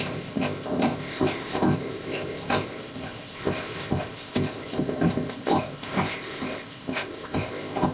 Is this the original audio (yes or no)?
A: no